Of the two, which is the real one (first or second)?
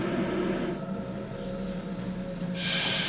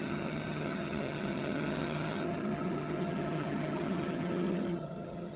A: first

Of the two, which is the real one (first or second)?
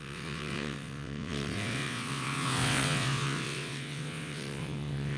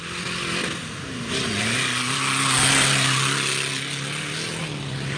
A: second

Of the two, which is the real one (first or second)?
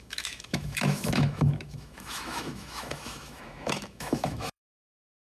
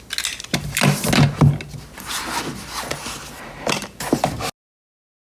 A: second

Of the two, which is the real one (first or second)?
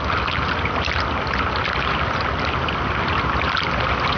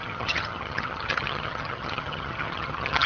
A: first